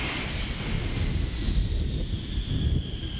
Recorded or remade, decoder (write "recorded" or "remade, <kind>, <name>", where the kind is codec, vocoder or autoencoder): recorded